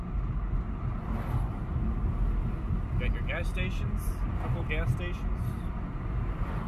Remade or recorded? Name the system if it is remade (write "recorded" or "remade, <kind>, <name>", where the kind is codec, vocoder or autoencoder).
recorded